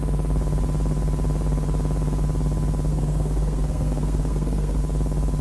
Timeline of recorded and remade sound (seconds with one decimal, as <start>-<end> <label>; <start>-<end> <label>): 0.0-2.9 recorded; 2.9-4.8 remade; 4.8-5.4 recorded